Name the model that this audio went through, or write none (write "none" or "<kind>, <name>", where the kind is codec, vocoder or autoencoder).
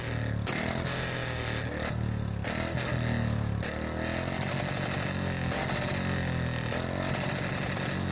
none